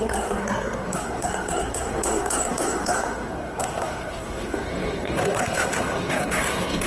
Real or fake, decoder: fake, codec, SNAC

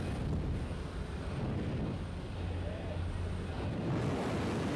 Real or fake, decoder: real